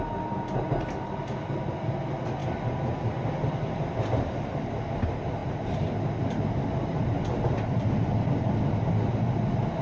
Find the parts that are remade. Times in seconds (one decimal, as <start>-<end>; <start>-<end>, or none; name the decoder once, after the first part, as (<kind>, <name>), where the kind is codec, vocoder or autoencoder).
none